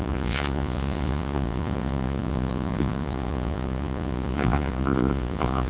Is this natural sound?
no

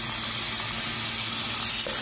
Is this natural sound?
yes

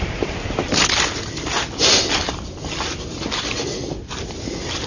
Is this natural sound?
yes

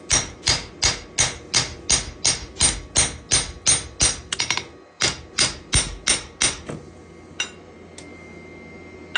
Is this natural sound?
yes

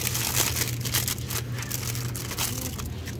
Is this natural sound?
yes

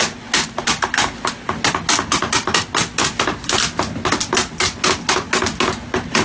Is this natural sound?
yes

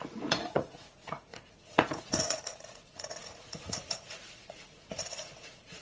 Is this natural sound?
no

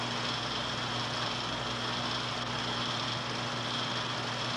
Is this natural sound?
yes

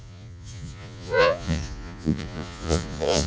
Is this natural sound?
no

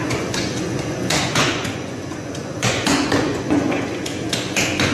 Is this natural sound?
no